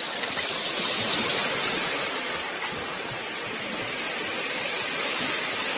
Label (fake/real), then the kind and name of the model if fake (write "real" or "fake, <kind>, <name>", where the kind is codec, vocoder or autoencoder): real